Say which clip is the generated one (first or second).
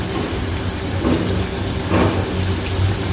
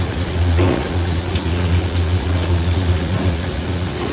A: second